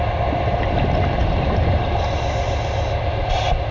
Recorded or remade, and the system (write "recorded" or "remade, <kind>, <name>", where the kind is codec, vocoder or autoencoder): recorded